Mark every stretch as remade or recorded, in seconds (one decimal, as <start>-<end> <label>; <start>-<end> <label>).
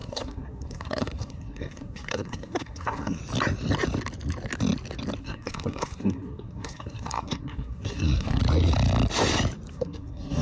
0.0-3.2 remade; 3.2-5.2 recorded; 5.2-8.4 remade; 8.4-9.7 recorded; 9.7-10.4 remade